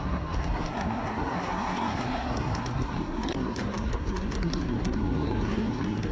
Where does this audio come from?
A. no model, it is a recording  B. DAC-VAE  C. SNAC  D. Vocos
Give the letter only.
C